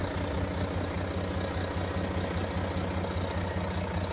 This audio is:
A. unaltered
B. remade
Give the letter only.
A